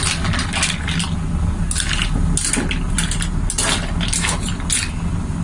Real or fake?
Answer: real